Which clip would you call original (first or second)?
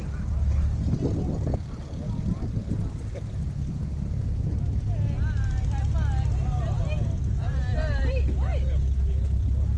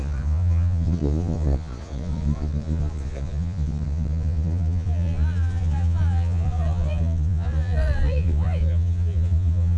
first